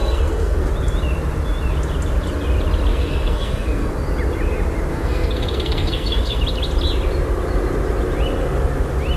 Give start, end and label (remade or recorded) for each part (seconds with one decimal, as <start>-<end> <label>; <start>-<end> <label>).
0.0-0.7 remade; 0.7-2.9 recorded; 2.9-3.9 remade; 3.9-4.9 recorded; 4.9-6.4 remade; 6.4-9.2 recorded